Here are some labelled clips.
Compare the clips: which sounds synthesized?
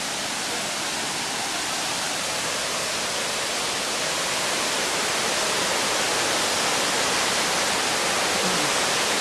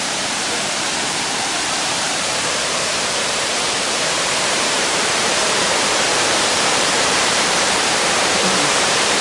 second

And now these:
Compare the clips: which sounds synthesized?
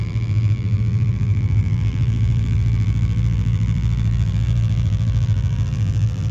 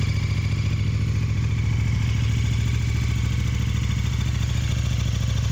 first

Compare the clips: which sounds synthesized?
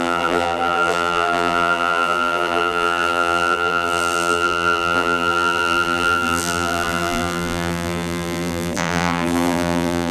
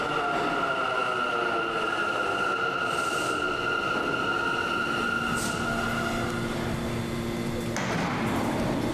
first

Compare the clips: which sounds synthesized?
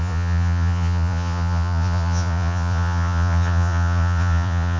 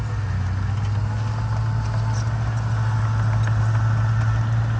first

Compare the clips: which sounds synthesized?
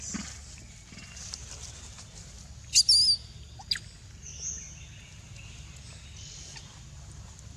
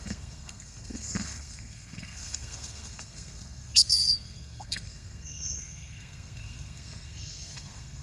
second